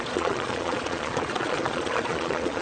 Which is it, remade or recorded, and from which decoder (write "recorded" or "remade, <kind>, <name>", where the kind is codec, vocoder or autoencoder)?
remade, vocoder, Vocos